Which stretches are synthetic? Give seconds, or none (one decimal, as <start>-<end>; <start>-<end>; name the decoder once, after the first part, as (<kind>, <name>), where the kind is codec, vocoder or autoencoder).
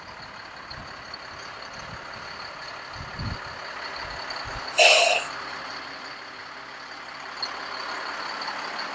none